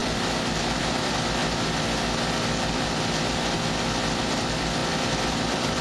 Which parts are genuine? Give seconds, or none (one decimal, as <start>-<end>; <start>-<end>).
0.0-0.8; 1.4-4.3